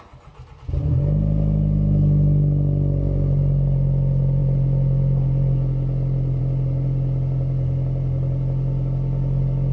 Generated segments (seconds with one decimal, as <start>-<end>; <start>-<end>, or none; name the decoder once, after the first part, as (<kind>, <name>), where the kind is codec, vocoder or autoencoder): none